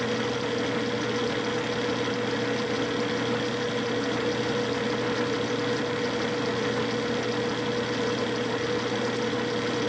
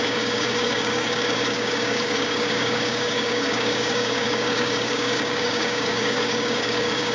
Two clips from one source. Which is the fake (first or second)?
second